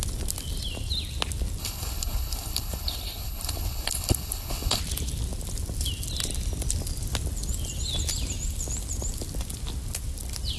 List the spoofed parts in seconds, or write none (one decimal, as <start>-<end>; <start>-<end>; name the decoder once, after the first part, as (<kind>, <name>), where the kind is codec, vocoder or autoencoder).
1.6-4.8 (codec, HILCodec)